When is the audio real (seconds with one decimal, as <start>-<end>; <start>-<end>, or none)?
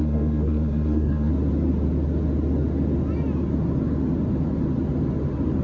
1.3-5.6